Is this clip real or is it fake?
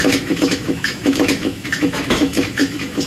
fake